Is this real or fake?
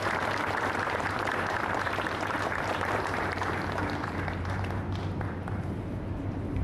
fake